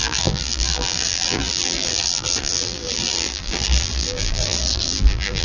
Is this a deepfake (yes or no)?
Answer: yes